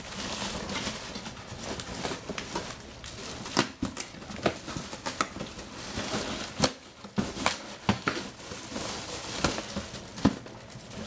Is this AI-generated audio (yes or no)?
no